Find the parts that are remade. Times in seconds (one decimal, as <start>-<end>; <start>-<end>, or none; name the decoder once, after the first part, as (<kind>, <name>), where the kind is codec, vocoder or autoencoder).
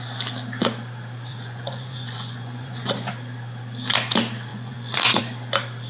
1.3-3.1 (vocoder, Vocos); 4.5-5.2